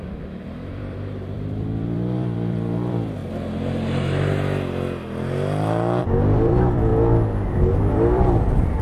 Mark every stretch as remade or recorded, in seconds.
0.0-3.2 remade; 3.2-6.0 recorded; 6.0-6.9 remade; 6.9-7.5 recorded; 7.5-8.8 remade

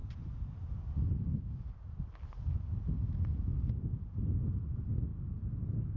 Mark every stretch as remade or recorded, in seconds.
0.0-6.0 recorded

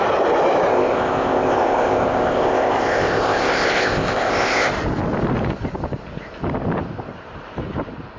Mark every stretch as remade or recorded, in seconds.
0.0-0.7 recorded; 0.7-4.7 remade; 4.7-8.2 recorded